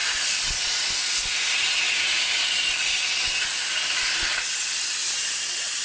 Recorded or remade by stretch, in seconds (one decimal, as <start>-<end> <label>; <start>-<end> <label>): 0.0-2.2 remade; 2.2-3.6 recorded; 3.6-4.1 remade; 4.1-5.8 recorded